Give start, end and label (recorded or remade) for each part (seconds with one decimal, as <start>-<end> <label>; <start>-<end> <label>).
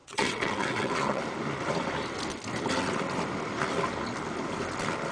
0.0-1.2 remade; 1.2-5.1 recorded